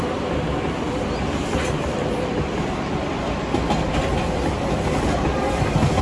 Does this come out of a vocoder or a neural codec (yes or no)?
no